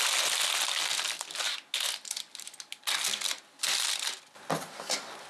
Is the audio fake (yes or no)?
no